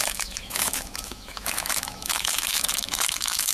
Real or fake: fake